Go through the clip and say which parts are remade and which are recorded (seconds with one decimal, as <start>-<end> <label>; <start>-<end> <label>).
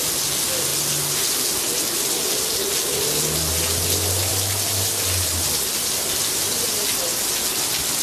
0.0-8.0 recorded